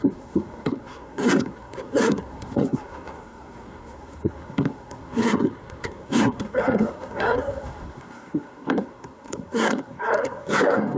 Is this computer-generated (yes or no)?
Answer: yes